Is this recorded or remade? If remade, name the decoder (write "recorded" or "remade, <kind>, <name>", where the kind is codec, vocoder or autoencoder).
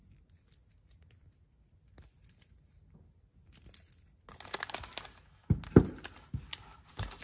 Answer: recorded